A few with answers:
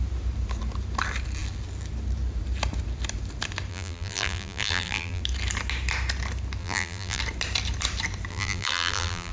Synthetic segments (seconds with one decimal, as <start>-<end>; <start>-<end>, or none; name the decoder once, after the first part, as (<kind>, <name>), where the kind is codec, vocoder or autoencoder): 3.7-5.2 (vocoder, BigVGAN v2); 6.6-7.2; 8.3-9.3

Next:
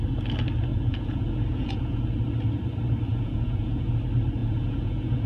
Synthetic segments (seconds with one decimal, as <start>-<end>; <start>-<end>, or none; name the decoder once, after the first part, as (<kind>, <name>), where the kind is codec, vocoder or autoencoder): 0.7-2.1 (vocoder, Vocos); 3.1-3.9; 4.4-5.3

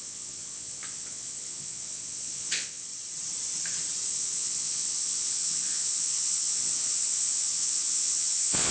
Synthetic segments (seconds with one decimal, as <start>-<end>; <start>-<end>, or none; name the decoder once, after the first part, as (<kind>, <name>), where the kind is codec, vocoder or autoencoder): 0.0-2.9 (vocoder, Vocos); 4.1-8.7

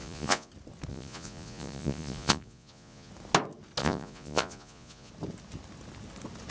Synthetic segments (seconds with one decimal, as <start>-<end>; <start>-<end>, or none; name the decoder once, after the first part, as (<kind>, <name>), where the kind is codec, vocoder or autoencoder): 0.0-0.5 (vocoder, Vocos); 0.9-3.1; 3.8-5.1